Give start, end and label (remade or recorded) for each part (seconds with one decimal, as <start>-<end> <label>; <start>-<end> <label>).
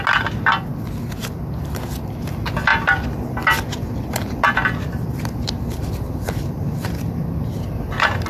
0.0-2.7 recorded; 2.7-7.0 remade; 7.0-8.3 recorded